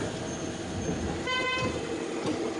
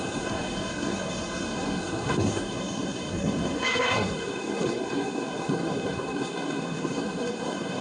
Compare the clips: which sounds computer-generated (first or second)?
second